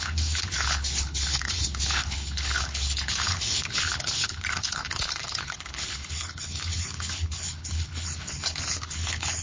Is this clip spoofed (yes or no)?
yes